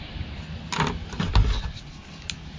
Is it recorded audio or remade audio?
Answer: recorded